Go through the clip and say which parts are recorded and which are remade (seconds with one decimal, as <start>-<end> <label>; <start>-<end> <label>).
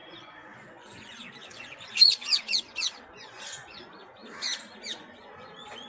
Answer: 0.0-4.2 remade; 4.2-4.9 recorded; 4.9-5.9 remade